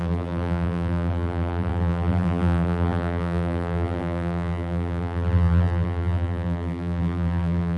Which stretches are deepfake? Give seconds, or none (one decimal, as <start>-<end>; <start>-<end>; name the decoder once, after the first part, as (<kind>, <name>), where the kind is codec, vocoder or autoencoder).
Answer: 0.0-7.8 (vocoder, BigVGAN v2)